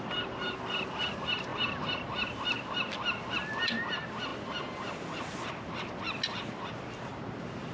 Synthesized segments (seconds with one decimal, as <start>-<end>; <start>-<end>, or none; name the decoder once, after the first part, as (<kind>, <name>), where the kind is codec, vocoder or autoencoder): none